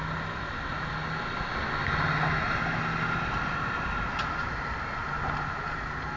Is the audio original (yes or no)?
yes